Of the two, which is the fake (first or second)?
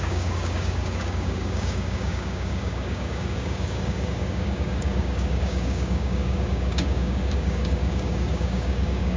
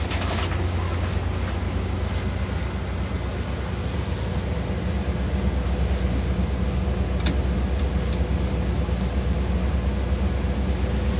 first